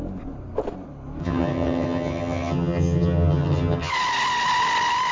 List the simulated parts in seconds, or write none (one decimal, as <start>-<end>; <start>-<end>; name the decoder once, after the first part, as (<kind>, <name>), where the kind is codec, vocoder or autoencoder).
1.2-3.9 (vocoder, HiFi-GAN)